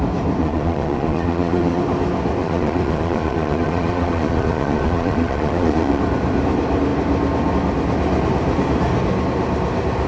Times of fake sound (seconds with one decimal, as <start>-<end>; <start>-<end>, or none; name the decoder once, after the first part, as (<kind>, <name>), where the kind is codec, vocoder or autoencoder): 0.4-1.8 (vocoder, Vocos); 2.4-6.0